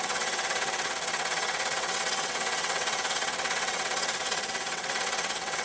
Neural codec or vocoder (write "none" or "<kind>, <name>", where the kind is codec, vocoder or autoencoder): vocoder, WaveNeXt